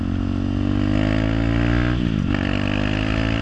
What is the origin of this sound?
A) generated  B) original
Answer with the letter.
B